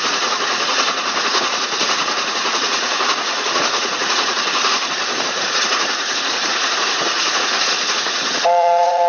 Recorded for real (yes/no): no